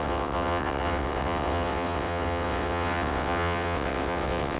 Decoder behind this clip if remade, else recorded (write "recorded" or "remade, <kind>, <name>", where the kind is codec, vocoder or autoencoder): remade, vocoder, WaveNeXt